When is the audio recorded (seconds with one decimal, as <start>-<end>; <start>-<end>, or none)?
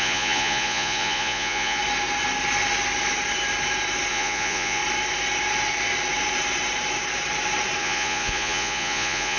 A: 1.8-4.1; 4.8-7.8